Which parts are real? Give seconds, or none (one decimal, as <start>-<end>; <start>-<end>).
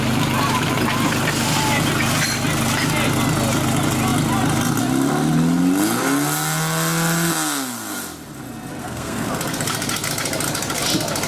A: 0.0-8.8; 9.3-11.3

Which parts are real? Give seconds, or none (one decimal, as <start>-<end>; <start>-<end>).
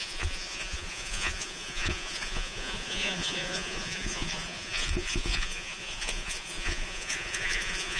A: none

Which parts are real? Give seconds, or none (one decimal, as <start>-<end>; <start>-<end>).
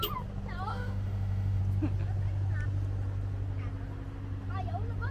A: 0.0-0.7; 1.6-5.1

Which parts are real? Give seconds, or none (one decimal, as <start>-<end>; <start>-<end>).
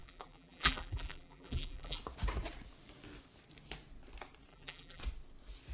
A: 2.0-4.5; 5.0-5.7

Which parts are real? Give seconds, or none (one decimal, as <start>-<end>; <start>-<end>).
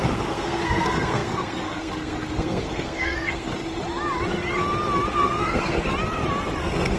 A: 3.5-5.1; 5.9-6.6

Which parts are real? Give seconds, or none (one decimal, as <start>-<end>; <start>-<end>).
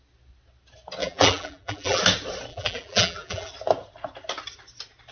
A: 0.0-1.0; 2.0-2.5; 3.5-5.1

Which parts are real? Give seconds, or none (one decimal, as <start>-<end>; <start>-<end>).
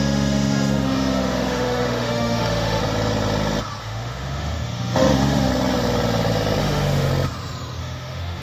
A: 2.8-3.8; 5.5-6.6; 7.1-7.8